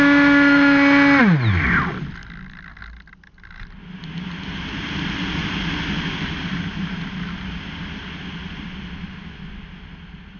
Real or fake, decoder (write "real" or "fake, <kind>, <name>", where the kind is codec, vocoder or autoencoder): real